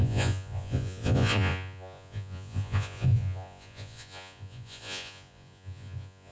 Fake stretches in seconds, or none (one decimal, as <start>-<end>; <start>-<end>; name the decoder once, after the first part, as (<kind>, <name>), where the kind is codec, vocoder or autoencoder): 0.0-6.3 (vocoder, Vocos)